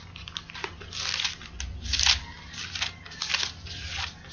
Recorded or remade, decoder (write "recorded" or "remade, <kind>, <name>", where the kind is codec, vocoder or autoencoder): recorded